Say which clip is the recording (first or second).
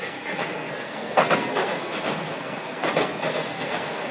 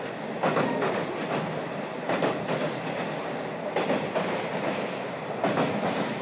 second